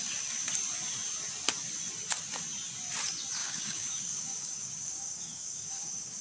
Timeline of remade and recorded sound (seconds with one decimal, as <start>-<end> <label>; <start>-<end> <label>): 0.0-3.4 recorded; 3.4-6.2 remade